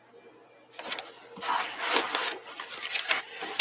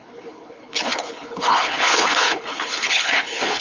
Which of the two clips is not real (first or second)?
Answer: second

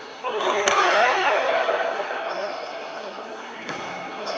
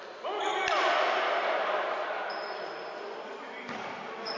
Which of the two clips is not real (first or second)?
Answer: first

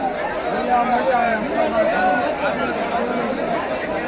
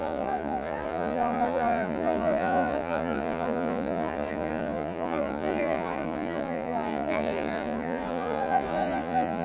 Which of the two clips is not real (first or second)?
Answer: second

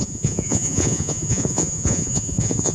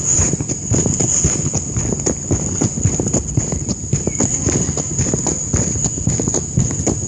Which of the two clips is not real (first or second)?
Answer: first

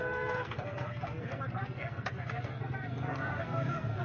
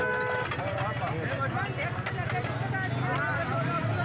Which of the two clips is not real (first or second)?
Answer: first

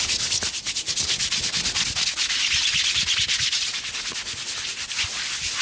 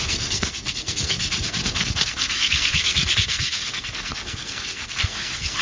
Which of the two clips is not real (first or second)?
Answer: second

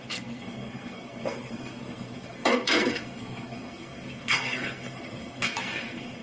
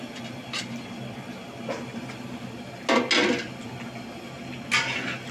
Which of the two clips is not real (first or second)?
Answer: first